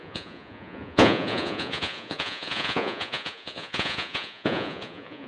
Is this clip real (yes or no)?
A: no